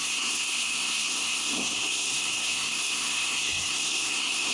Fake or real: fake